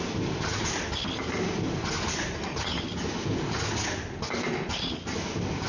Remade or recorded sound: recorded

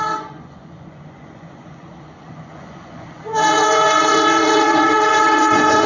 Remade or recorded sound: remade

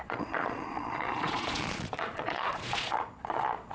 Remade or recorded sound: remade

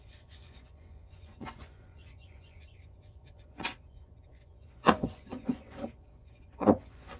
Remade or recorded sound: remade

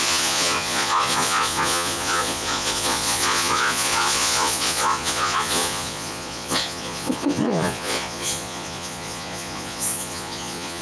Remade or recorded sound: remade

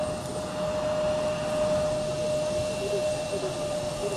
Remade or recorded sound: recorded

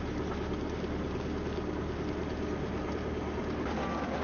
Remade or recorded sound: recorded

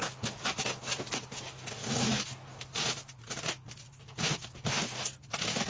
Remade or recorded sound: recorded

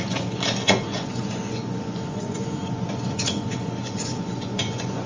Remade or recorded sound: remade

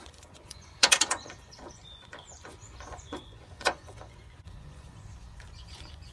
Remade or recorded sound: remade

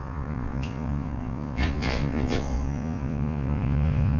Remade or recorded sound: remade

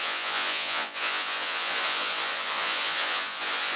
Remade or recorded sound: remade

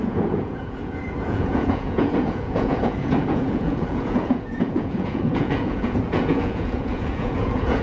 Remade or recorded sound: remade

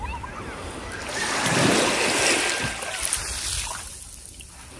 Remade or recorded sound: recorded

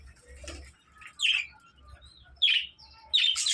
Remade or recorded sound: recorded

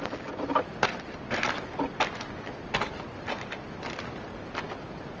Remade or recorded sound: recorded